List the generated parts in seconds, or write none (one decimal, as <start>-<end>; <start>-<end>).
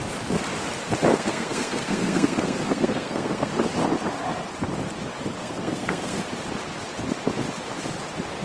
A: 1.1-3.5; 5.4-6.2